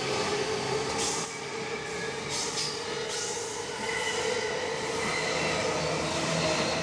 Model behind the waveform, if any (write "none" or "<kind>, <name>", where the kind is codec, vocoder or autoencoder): none